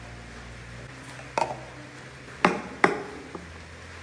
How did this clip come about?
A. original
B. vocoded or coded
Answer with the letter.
A